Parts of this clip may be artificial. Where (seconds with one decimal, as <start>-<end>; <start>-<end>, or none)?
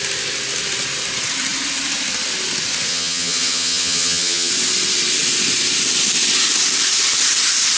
2.9-4.5